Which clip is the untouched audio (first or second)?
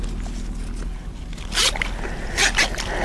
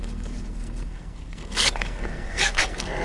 first